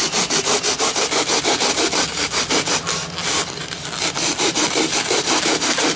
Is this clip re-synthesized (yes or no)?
no